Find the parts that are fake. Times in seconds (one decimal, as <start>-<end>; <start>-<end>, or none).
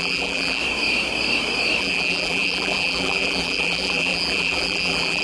0.0-0.6; 1.8-5.2